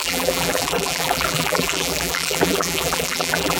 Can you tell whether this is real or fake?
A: fake